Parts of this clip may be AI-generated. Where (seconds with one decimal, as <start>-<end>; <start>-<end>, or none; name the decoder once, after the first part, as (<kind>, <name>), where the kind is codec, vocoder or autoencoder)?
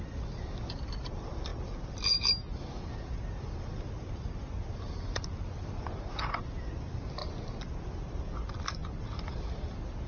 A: none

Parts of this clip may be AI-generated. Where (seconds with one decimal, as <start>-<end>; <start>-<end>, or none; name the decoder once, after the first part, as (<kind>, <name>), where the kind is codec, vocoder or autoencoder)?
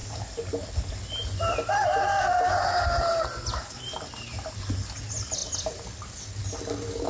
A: none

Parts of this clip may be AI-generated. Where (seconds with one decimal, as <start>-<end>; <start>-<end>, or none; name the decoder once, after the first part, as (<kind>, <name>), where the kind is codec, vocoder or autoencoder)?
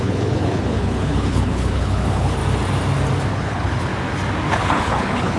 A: 0.0-2.4 (codec, HILCodec); 3.3-3.9; 4.5-5.4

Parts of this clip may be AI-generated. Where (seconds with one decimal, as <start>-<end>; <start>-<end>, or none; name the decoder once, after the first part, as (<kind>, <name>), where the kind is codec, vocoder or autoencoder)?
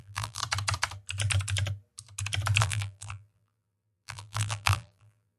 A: 0.0-0.4 (vocoder, BigVGAN v2); 2.6-5.4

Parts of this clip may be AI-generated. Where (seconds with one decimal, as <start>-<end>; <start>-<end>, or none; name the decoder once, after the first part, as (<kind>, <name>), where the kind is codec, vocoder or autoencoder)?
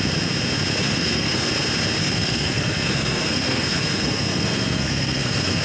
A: 0.8-1.5 (codec, SNAC); 2.0-5.6